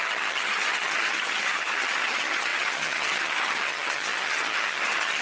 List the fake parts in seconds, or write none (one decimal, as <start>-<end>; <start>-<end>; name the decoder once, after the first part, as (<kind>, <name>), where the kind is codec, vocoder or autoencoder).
0.0-5.2 (vocoder, HiFi-GAN)